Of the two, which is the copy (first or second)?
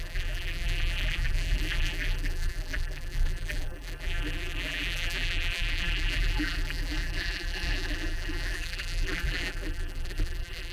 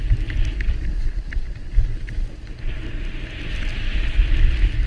first